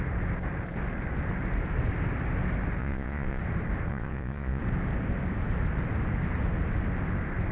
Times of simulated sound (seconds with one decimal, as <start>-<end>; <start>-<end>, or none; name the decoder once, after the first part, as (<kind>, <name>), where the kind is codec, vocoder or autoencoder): 2.8-3.4 (vocoder, Vocos); 3.9-4.6